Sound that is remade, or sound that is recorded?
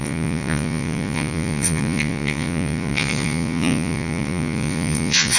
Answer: remade